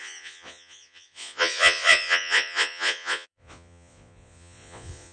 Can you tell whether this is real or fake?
fake